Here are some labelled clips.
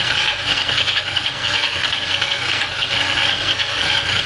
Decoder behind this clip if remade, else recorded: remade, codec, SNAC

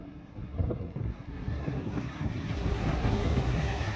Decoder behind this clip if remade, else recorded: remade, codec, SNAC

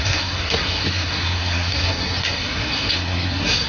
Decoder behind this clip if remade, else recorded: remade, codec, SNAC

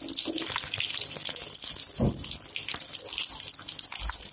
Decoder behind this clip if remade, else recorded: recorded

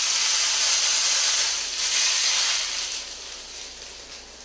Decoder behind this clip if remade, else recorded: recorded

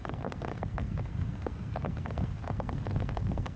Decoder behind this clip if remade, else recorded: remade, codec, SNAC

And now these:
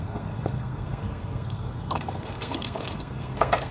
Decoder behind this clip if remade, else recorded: remade, codec, SNAC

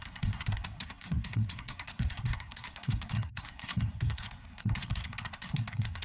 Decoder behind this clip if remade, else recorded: remade, codec, SNAC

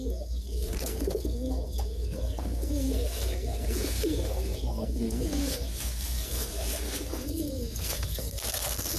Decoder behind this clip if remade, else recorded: remade, codec, SNAC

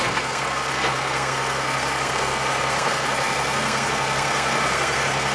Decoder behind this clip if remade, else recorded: remade, codec, SNAC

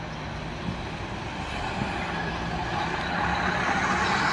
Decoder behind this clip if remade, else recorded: recorded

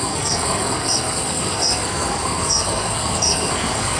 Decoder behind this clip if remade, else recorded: remade, codec, SNAC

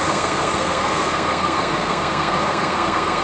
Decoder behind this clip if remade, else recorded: remade, codec, SNAC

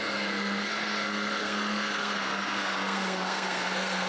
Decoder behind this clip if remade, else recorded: remade, codec, SNAC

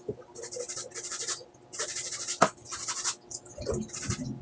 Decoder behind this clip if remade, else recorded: recorded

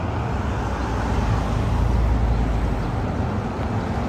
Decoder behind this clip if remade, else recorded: recorded